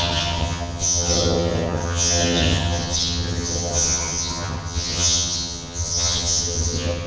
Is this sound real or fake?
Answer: fake